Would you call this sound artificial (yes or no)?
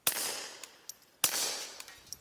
no